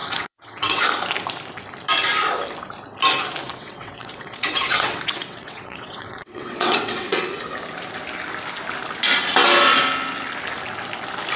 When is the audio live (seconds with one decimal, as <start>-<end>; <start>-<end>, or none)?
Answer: 0.8-3.4; 7.2-11.4